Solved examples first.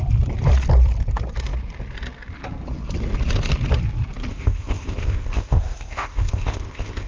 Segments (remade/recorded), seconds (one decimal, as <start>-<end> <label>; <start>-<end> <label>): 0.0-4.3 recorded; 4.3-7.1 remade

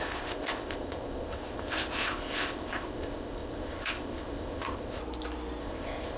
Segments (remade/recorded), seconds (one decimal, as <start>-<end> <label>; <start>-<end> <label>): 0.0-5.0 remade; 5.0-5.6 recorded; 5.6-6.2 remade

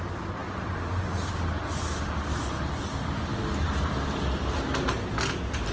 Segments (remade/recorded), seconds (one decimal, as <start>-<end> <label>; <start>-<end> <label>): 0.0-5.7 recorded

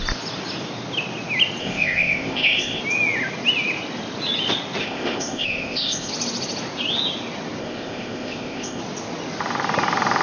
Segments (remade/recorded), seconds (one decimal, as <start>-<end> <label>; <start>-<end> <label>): 0.0-1.6 recorded; 1.6-2.8 remade; 2.8-4.8 recorded; 4.8-6.1 remade; 6.1-7.6 recorded; 7.6-8.8 remade; 8.8-10.2 recorded

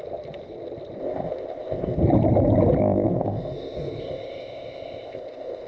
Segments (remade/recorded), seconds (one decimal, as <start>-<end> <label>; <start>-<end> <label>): 0.0-1.0 recorded; 1.0-2.0 remade; 2.0-2.8 recorded; 2.8-5.7 remade

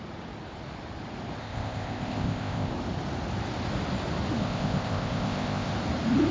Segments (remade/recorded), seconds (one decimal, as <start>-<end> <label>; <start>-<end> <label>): 0.0-1.4 recorded; 1.4-2.7 remade; 2.7-4.4 recorded; 4.4-5.7 remade; 5.7-6.3 recorded

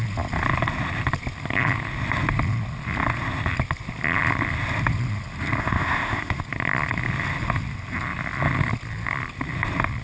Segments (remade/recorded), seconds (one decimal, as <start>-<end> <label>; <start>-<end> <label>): 0.0-5.6 recorded; 5.6-6.4 remade; 6.4-10.0 recorded